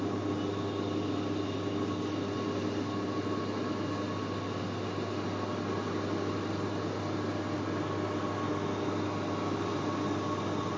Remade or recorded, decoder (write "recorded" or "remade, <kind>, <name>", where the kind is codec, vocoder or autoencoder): recorded